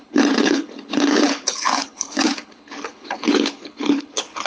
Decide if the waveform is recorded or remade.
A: remade